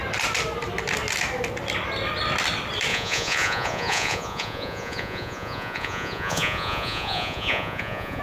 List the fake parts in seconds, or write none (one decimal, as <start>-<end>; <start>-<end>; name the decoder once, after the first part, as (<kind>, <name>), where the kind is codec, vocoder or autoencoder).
2.9-8.2 (vocoder, Vocos)